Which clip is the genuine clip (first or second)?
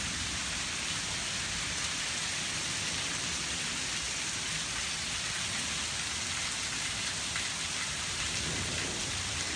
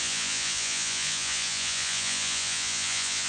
first